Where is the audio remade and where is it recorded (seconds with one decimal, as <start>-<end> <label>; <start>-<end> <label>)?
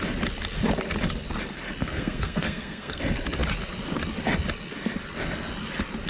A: 0.0-1.8 recorded; 1.8-3.0 remade; 3.0-6.1 recorded